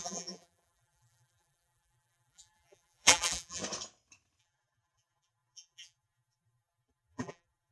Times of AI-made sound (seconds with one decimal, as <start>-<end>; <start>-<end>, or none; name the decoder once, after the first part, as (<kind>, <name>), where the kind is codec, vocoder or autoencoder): 0.0-3.6 (vocoder, BigVGAN v2); 4.4-7.7